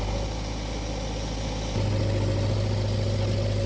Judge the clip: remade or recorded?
recorded